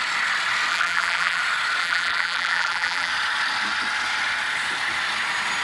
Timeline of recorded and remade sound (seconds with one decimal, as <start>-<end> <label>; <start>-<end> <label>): 0.0-0.7 recorded; 0.7-1.4 remade; 1.4-1.8 recorded; 1.8-3.1 remade; 3.1-5.6 recorded